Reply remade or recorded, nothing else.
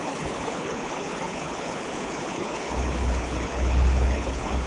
remade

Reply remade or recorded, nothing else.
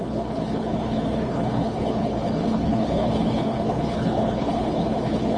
remade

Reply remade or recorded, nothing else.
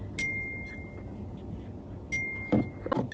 recorded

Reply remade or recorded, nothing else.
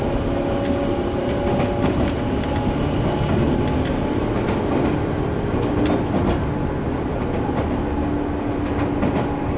recorded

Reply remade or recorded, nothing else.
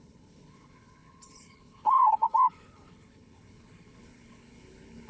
remade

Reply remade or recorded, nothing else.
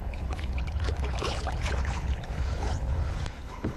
remade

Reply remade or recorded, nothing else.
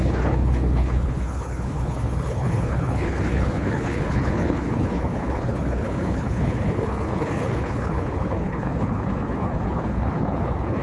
remade